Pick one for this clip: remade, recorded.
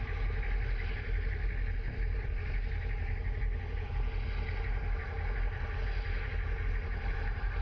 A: recorded